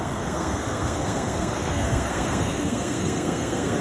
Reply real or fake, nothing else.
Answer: fake